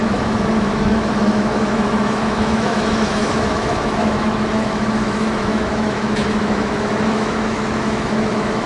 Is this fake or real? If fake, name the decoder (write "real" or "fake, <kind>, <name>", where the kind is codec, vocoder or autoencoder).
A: fake, autoencoder, DAC-VAE